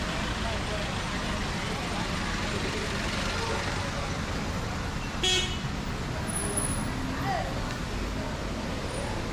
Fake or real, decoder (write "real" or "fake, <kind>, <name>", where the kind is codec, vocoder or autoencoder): real